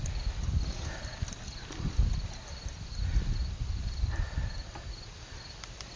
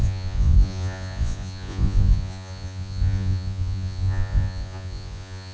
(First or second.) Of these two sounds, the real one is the first